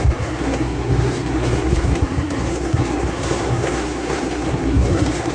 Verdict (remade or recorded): remade